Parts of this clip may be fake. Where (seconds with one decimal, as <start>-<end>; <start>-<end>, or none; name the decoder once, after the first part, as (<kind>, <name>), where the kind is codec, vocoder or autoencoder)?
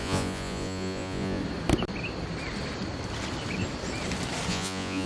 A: 0.0-1.4 (vocoder, Vocos); 4.5-5.1